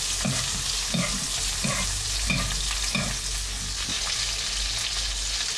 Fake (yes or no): no